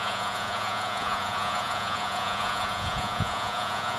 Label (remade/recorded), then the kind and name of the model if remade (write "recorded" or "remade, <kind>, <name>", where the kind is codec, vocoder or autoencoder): remade, vocoder, Vocos